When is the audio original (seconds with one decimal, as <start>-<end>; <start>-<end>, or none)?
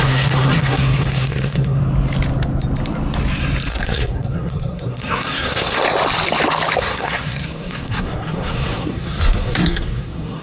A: 1.8-3.7; 5.8-6.8